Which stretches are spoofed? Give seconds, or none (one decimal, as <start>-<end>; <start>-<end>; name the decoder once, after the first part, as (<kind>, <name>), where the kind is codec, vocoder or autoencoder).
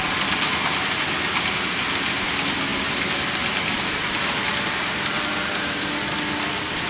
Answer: none